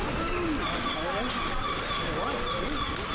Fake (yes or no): no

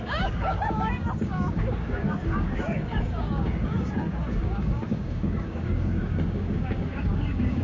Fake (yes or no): yes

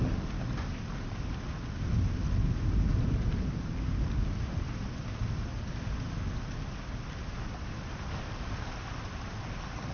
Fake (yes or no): no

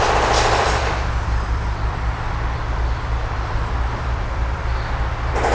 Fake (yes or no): yes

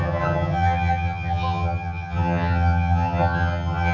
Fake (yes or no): yes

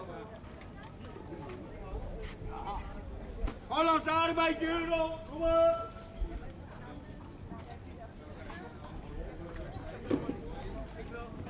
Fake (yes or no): no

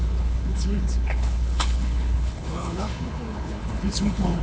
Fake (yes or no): yes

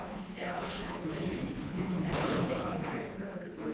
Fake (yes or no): yes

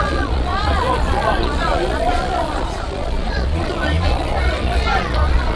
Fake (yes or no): yes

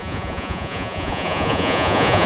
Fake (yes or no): yes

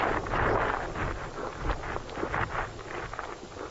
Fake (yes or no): no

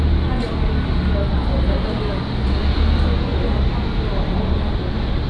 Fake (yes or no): no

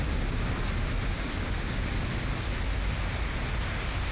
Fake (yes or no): no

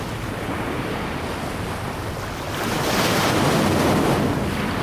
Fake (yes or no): no